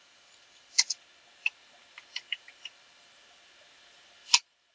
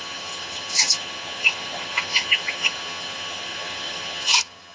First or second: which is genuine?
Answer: first